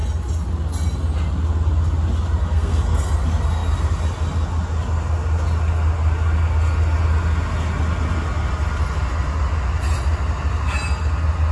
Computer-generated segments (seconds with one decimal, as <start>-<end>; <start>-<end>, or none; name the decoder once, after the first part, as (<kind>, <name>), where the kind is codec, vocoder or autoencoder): 2.4-3.1 (codec, SNAC)